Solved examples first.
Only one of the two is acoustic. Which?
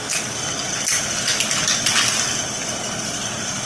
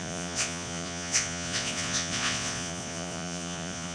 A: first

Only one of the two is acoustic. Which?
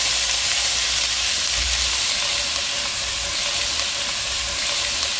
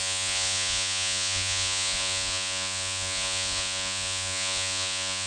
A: first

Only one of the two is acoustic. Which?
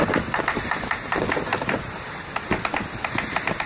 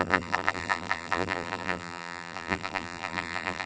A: first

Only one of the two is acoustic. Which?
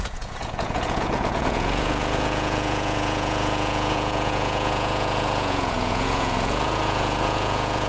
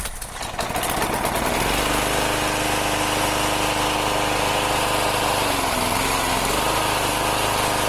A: second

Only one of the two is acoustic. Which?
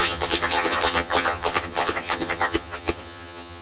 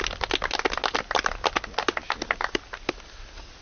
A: second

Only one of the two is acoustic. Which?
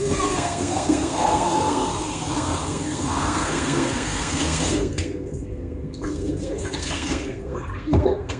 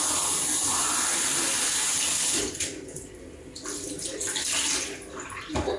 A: second